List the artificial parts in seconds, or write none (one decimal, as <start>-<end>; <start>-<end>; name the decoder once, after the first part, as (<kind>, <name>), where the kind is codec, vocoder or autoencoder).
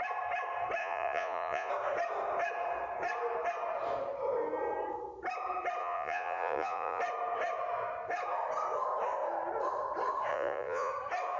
0.8-1.7 (vocoder, Vocos); 5.8-7.0; 10.3-10.9